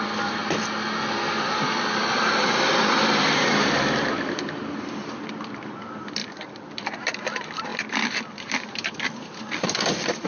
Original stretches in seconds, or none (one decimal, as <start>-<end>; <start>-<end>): 0.4-2.1; 7.7-8.2